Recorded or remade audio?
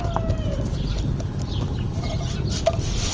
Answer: recorded